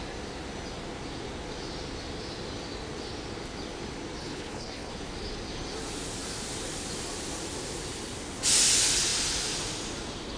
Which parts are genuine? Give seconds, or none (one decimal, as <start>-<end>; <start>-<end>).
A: 0.0-4.2; 4.9-10.4